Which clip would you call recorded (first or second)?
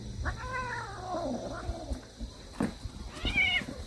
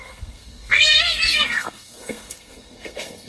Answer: first